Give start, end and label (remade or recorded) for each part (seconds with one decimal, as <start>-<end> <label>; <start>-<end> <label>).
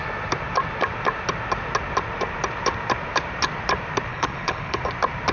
0.0-4.1 recorded; 4.1-4.8 remade; 4.8-5.3 recorded